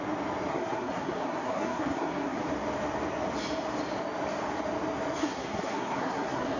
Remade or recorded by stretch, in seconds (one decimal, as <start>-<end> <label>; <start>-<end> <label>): 0.0-0.5 recorded; 0.5-2.4 remade; 2.4-5.2 recorded; 5.2-6.6 remade